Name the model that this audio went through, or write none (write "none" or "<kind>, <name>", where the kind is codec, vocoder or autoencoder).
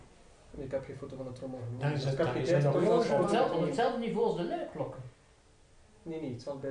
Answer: none